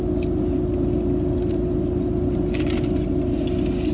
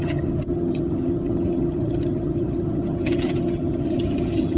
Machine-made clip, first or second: second